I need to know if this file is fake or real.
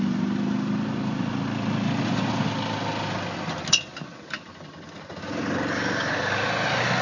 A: real